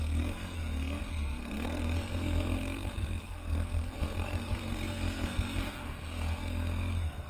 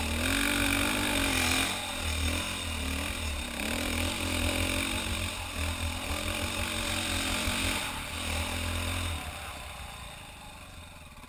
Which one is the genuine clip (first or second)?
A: second